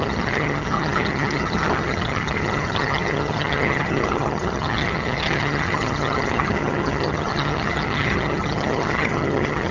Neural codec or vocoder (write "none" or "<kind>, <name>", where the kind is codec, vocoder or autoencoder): vocoder, HiFi-GAN